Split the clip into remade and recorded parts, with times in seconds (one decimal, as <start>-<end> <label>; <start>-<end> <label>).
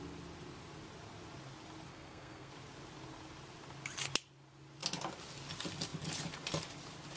0.0-1.9 recorded; 1.9-2.5 remade; 2.5-7.2 recorded